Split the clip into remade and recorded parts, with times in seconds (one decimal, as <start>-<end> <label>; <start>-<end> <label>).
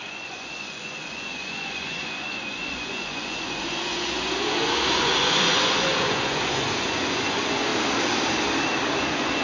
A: 0.0-7.7 remade; 7.7-9.0 recorded; 9.0-9.4 remade